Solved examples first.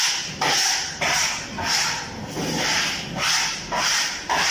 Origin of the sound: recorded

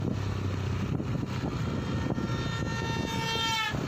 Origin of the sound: recorded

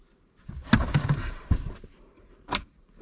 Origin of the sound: remade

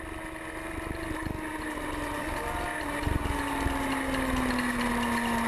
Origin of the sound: recorded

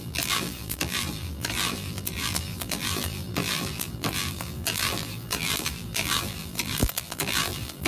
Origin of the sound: remade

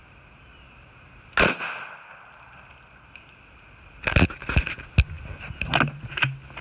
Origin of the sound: recorded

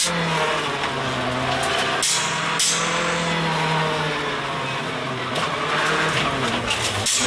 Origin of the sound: recorded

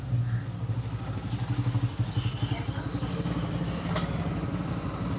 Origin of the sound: recorded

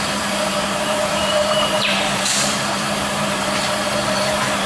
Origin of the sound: remade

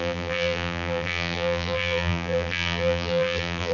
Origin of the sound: remade